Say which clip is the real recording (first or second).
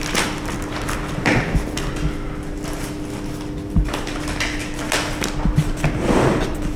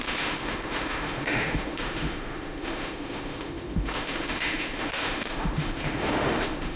first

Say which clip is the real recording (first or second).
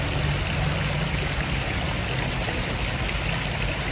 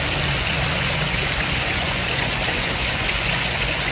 first